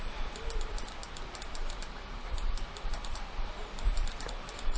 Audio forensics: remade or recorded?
remade